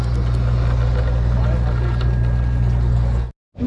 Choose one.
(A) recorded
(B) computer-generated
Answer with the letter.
A